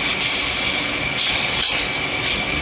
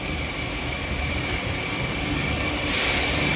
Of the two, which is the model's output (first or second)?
second